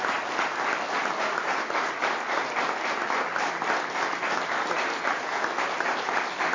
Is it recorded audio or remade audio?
recorded